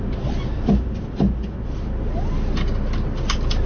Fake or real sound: real